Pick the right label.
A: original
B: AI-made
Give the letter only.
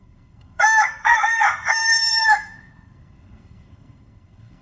B